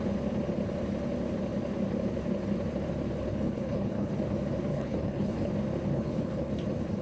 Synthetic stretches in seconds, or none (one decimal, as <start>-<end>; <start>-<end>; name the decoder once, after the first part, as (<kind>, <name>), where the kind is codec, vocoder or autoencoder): 3.3-4.1 (codec, HILCodec); 4.7-5.5; 5.9-6.5